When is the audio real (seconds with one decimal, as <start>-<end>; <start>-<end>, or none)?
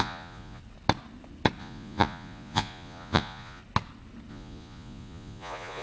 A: 0.6-1.6; 3.6-4.3